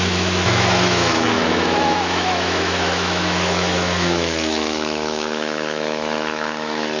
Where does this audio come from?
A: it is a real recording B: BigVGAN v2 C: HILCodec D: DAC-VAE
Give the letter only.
D